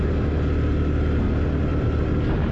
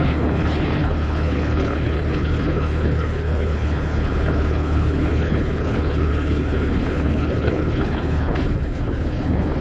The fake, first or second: second